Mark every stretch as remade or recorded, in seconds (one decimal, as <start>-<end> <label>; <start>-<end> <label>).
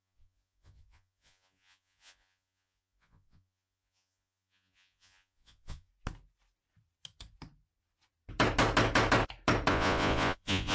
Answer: 0.0-5.9 remade; 5.9-9.7 recorded; 9.7-10.7 remade